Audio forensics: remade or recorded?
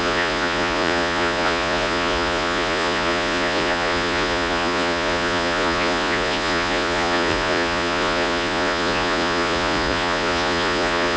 remade